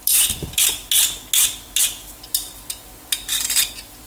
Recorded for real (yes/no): yes